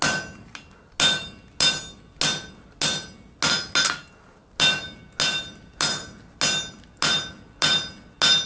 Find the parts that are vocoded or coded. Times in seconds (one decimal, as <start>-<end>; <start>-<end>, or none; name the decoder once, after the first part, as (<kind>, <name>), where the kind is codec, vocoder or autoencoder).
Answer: none